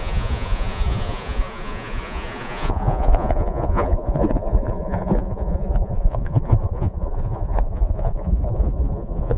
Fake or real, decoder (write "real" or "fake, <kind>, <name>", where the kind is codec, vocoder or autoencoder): fake, vocoder, Vocos